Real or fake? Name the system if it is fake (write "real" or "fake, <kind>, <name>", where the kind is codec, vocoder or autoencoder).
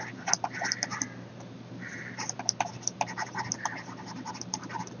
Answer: real